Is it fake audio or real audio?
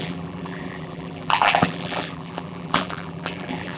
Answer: fake